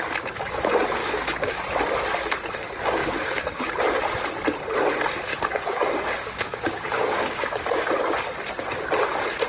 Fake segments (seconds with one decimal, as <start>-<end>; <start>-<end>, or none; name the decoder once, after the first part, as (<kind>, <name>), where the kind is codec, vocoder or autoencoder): 1.0-1.6 (codec, DAC); 3.0-3.7; 5.3-7.9